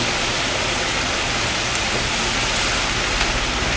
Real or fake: real